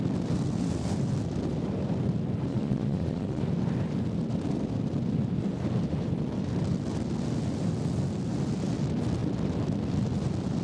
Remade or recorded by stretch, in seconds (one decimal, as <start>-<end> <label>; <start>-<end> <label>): 0.0-2.5 recorded; 2.5-3.4 remade; 3.4-10.6 recorded